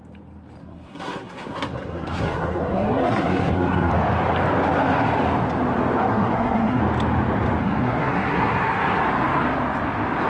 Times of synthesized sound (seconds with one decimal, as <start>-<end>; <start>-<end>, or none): 0.6-3.9; 6.1-6.8; 7.6-9.0